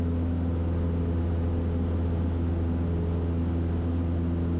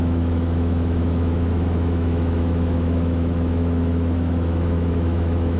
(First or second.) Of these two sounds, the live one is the first